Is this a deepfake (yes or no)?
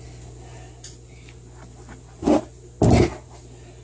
no